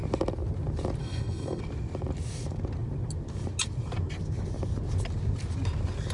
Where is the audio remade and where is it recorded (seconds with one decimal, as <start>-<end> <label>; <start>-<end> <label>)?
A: 0.0-1.0 recorded; 1.0-1.6 remade; 1.6-6.1 recorded